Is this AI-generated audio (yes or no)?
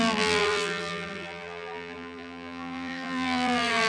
yes